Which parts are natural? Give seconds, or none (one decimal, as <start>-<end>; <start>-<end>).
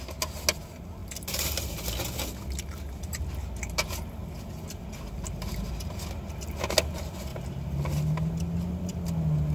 0.0-9.5